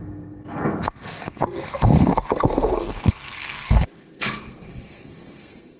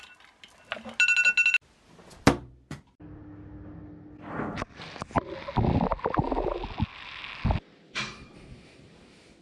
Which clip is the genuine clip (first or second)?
second